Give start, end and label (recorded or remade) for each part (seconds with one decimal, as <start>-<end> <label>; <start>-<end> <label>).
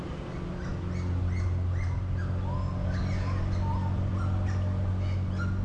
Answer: 0.0-5.6 recorded